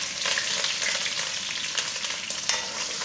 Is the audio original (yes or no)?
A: yes